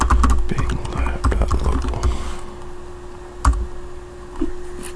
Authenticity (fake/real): real